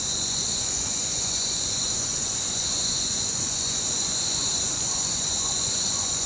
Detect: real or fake fake